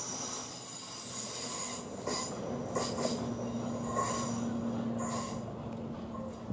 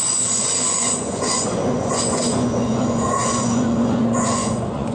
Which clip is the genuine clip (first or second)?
first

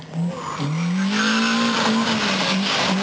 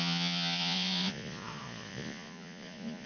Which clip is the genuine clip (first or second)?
first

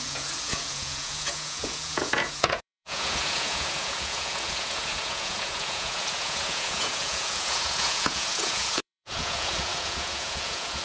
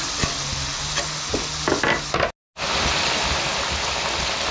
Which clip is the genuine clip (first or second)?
second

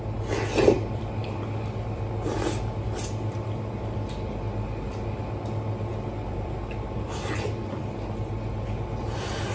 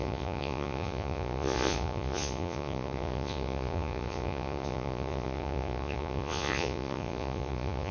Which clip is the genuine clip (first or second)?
first